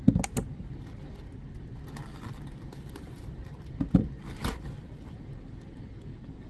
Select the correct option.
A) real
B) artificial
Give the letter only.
A